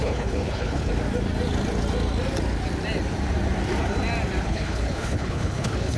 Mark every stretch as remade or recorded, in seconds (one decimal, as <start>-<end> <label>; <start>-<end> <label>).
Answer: 0.0-0.9 remade; 0.9-4.4 recorded; 4.4-6.0 remade